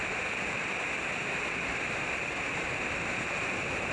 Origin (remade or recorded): remade